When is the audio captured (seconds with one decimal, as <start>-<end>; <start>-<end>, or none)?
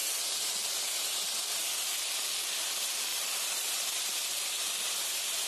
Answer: 0.8-3.1